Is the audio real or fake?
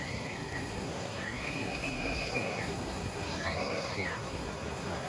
fake